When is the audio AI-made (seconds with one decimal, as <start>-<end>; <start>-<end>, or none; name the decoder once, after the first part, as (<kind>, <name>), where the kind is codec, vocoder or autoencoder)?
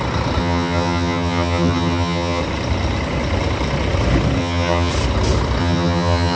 0.4-2.4 (vocoder, HiFi-GAN); 4.4-4.9; 5.6-6.4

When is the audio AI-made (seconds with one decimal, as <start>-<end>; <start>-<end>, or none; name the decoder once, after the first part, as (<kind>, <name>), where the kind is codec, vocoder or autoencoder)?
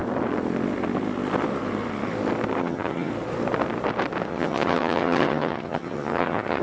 2.6-3.1 (vocoder, HiFi-GAN); 4.3-6.6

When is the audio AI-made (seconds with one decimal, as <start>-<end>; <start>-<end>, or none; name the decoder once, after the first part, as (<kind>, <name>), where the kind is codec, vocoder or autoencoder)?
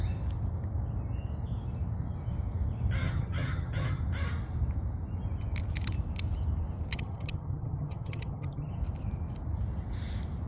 3.0-4.0 (vocoder, HiFi-GAN); 6.9-8.8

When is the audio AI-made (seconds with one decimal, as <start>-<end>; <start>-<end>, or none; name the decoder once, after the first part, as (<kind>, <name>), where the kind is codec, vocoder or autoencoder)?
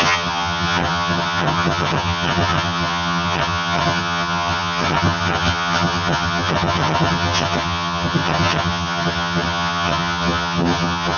0.0-11.2 (vocoder, HiFi-GAN)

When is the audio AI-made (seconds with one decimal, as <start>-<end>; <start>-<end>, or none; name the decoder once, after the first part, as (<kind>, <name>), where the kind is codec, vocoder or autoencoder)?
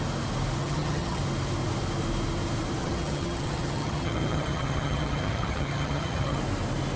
0.6-1.2 (vocoder, HiFi-GAN); 2.8-6.4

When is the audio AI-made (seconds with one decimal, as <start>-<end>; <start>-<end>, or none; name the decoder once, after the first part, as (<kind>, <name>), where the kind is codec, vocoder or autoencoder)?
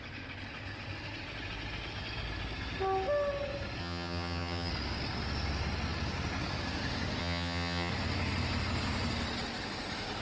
3.8-4.7 (vocoder, HiFi-GAN); 7.2-7.9